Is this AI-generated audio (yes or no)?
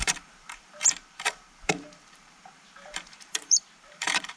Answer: yes